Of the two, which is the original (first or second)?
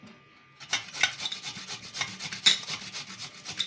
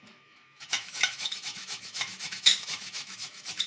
first